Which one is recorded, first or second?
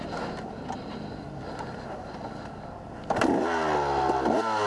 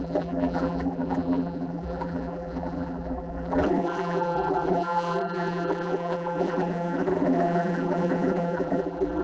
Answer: first